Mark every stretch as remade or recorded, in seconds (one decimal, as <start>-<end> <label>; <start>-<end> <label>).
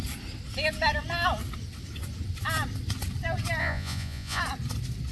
0.0-3.6 recorded; 3.6-4.4 remade; 4.4-5.1 recorded